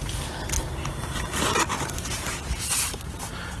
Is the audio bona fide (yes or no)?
yes